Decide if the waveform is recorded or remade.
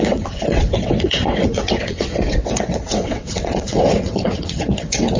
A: remade